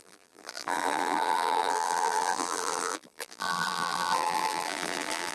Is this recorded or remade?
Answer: remade